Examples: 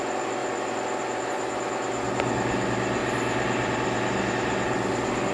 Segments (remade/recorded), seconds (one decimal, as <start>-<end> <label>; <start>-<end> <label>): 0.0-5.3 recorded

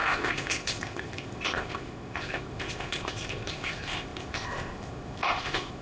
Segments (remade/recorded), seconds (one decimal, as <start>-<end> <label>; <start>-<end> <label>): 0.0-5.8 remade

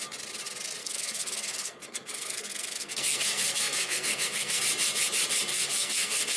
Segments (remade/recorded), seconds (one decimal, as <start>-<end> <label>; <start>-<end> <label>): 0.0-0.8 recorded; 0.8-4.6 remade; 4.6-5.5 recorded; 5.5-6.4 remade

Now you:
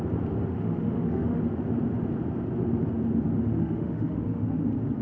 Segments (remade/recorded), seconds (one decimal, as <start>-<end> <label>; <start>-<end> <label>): 0.0-0.5 recorded; 0.5-1.4 remade; 1.4-3.6 recorded; 3.6-4.6 remade; 4.6-5.0 recorded

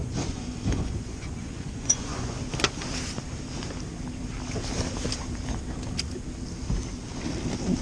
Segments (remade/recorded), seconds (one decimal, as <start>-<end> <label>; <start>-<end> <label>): 0.0-2.4 remade; 2.4-7.8 recorded

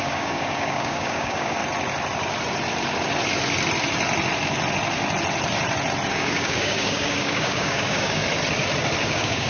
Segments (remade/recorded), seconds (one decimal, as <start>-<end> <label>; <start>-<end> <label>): 0.0-1.6 remade; 1.6-6.1 recorded; 6.1-8.2 remade; 8.2-9.0 recorded; 9.0-9.5 remade

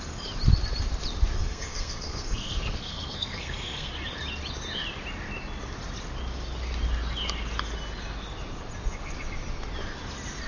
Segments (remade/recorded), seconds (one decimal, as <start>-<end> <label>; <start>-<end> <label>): 0.0-1.4 recorded; 1.4-3.9 remade; 3.9-10.5 recorded